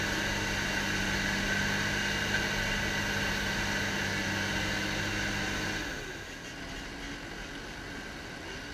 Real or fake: real